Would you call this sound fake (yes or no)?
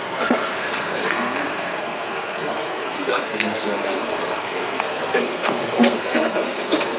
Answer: yes